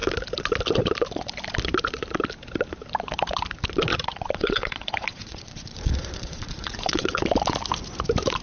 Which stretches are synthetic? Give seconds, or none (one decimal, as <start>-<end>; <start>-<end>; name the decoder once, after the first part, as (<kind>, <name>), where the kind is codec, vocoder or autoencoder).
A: 3.9-7.2 (vocoder, Vocos)